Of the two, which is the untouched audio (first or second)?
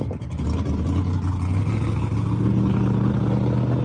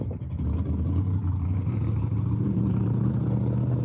first